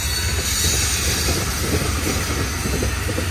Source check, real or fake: real